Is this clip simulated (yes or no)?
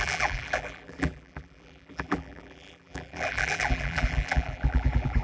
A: yes